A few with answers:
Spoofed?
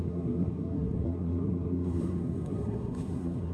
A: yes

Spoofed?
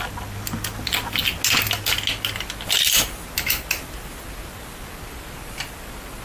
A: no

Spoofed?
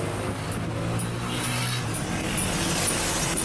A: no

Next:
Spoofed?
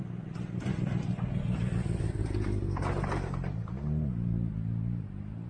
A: no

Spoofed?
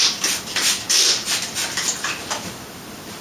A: yes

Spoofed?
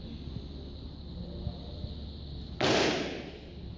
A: no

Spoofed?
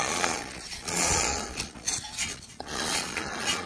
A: yes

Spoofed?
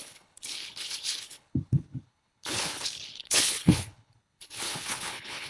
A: yes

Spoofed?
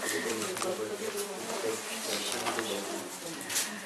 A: no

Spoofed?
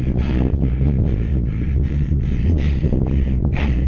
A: yes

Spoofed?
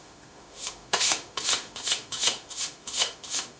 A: yes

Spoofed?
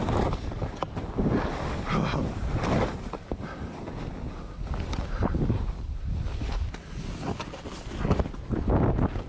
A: no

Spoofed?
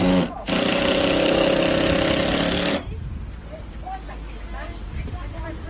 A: no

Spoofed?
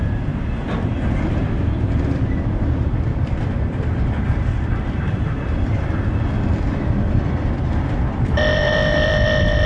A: yes